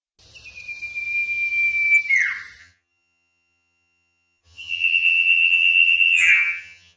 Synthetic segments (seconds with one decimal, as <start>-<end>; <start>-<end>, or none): 2.6-7.0